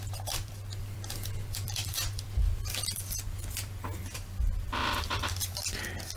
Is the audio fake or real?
fake